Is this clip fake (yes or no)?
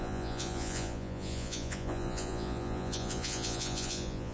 yes